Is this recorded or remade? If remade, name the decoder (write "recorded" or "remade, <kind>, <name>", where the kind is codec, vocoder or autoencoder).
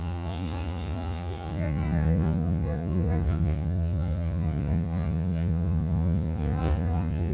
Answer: remade, vocoder, Vocos